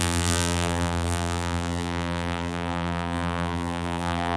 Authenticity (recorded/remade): remade